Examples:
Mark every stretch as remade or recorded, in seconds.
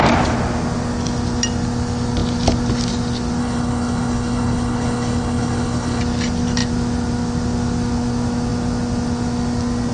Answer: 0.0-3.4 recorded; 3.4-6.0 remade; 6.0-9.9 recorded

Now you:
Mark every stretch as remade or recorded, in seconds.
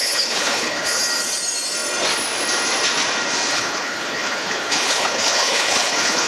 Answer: 0.0-1.0 remade; 1.0-3.5 recorded; 3.5-6.3 remade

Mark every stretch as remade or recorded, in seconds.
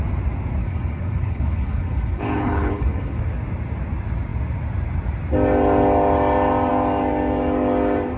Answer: 0.0-0.6 recorded; 0.6-3.2 remade; 3.2-8.2 recorded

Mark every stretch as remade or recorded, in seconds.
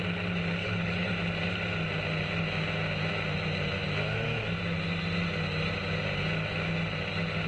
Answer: 0.0-0.6 recorded; 0.6-1.1 remade; 1.1-7.5 recorded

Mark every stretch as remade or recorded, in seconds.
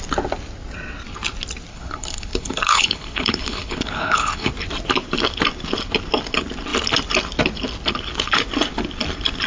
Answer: 0.0-1.7 recorded; 1.7-4.5 remade; 4.5-9.5 recorded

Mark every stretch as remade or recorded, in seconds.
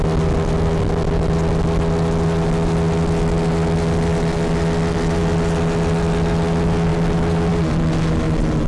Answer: 0.0-8.7 recorded